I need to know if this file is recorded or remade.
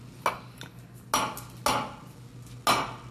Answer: recorded